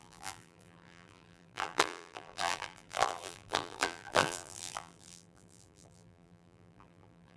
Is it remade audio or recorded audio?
remade